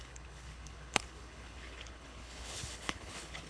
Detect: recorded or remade remade